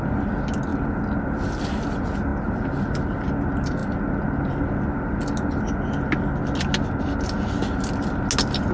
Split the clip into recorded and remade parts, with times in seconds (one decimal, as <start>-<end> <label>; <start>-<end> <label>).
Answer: 0.0-8.7 recorded